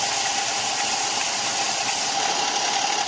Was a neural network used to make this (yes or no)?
no